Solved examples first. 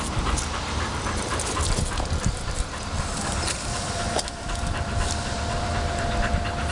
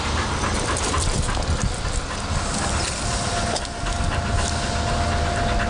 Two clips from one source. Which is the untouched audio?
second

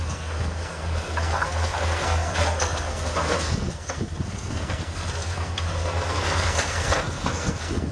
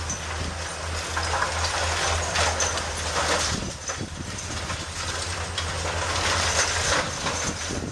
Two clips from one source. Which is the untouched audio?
second